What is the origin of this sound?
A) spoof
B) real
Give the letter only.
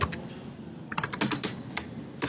B